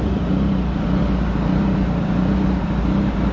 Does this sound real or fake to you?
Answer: real